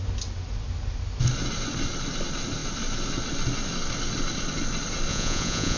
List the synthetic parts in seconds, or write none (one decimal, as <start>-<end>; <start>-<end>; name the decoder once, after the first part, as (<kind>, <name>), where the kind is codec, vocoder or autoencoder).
5.1-5.8 (vocoder, Vocos)